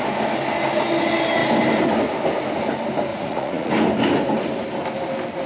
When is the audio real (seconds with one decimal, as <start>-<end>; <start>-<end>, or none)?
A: 0.0-3.1; 3.7-5.5